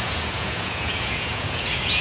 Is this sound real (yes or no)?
no